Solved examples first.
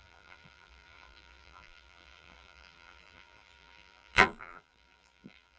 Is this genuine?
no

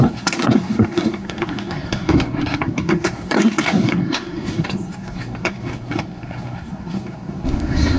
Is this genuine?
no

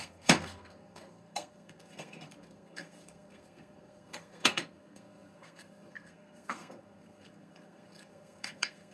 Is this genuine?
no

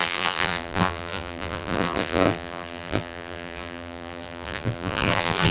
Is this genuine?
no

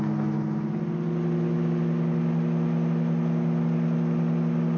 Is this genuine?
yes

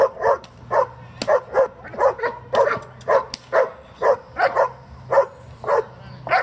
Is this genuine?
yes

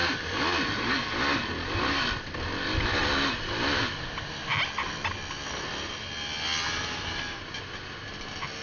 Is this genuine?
yes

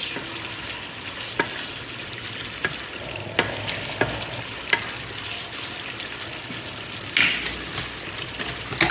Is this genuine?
yes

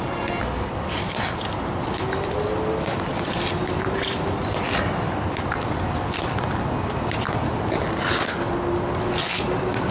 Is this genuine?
yes